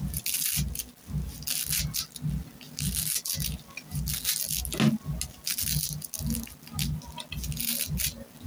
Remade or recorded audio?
recorded